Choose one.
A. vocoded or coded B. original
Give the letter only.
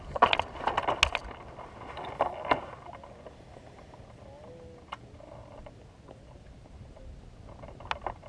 B